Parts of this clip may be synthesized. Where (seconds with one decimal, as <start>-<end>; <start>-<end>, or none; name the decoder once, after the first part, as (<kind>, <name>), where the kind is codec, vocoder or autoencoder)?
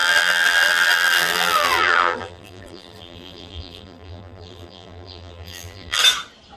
0.0-6.0 (vocoder, BigVGAN v2)